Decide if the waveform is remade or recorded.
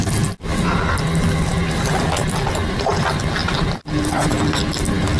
recorded